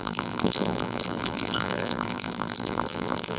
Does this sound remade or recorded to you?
remade